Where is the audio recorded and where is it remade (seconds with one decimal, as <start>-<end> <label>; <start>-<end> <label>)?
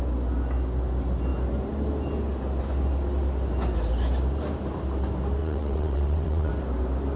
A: 0.0-5.4 recorded; 5.4-6.5 remade; 6.5-7.2 recorded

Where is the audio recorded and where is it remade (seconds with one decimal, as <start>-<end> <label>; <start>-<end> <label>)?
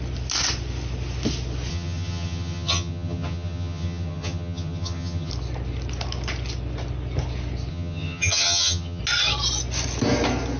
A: 0.0-1.7 recorded; 1.7-5.3 remade; 5.3-7.7 recorded; 7.7-9.0 remade; 9.0-10.6 recorded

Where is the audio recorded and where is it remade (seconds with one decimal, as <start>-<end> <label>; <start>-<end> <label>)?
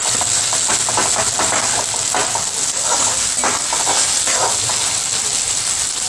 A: 0.0-6.1 recorded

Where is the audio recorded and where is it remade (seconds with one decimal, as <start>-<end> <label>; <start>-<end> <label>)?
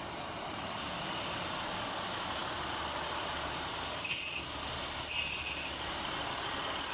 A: 0.0-6.9 recorded